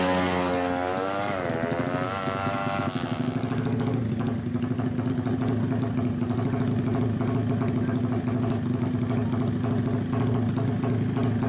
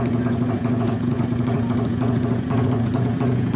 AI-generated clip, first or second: second